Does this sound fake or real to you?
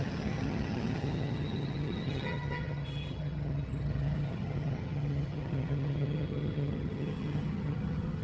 fake